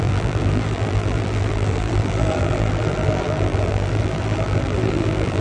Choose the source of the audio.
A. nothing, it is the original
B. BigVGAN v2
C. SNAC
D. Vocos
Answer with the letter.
B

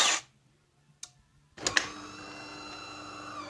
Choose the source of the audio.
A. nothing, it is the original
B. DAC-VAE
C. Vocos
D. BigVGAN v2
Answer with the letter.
A